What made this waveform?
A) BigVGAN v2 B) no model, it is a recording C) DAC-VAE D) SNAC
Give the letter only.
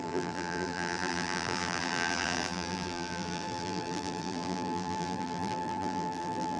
A